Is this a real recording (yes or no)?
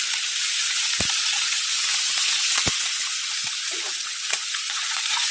no